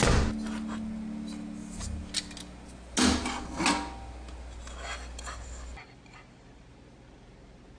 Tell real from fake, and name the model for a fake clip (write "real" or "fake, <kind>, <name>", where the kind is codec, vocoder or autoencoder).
real